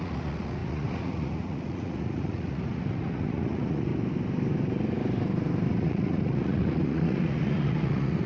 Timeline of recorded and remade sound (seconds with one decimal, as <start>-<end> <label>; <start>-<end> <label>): 0.0-3.9 remade; 3.9-5.7 recorded; 5.7-8.3 remade